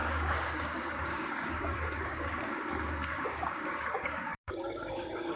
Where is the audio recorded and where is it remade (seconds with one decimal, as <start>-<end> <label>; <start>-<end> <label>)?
0.0-5.4 remade